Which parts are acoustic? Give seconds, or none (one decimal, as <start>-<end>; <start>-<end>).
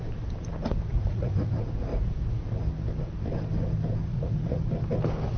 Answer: 0.0-0.9; 1.5-1.9; 2.4-4.1; 4.8-5.4